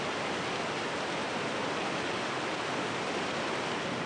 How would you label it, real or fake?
real